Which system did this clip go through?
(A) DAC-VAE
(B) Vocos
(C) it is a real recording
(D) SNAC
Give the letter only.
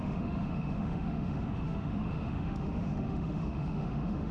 A